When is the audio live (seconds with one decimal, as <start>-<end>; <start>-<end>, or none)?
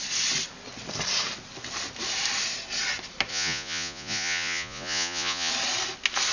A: 0.0-3.3; 5.5-6.3